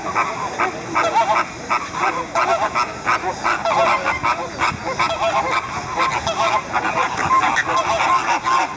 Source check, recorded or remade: recorded